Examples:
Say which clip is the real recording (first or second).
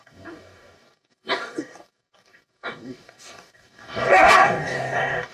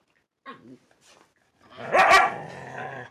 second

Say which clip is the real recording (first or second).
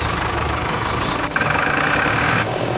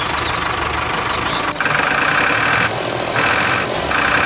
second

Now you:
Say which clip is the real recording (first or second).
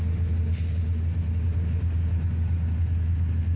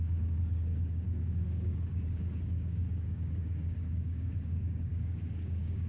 first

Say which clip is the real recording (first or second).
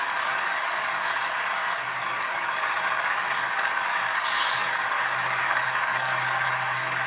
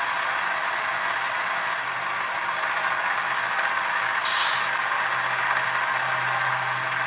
second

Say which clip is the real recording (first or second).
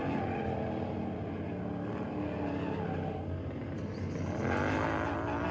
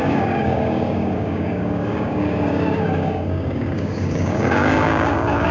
first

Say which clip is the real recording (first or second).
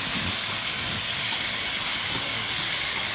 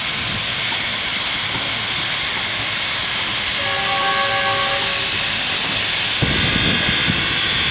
second